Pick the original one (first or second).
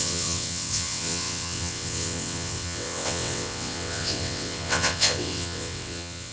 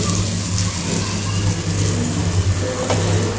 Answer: second